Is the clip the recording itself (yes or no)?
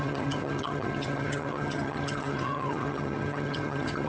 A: no